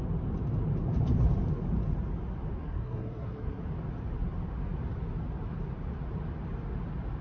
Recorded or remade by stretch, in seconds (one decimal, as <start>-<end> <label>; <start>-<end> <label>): 0.0-2.6 recorded; 2.6-3.6 remade; 3.6-7.2 recorded